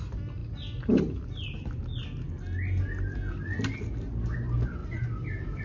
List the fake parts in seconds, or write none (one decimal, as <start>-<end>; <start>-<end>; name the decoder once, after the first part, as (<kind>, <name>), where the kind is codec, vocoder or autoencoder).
4.8-5.6 (vocoder, BigVGAN v2)